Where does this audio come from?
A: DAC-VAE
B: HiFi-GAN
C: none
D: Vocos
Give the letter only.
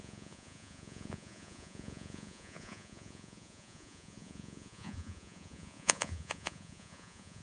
D